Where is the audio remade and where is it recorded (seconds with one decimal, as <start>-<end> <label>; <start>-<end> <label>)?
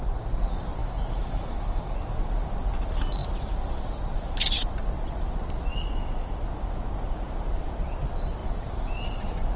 0.0-0.8 recorded; 0.8-1.8 remade; 1.8-5.7 recorded; 5.7-6.4 remade; 6.4-9.6 recorded